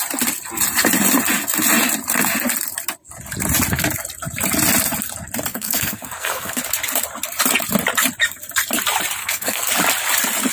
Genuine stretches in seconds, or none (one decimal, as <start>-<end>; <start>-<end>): 0.0-5.5; 6.6-9.2; 9.7-10.5